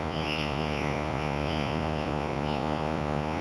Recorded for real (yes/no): no